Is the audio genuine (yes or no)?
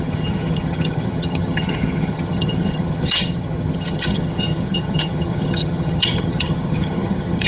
no